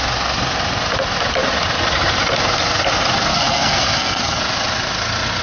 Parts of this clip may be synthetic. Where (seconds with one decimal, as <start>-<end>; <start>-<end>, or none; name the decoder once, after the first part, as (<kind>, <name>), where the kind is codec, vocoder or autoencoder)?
3.3-4.4 (codec, SNAC)